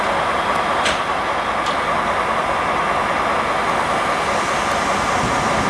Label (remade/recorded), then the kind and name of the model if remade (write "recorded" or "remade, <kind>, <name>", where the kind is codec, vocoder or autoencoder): recorded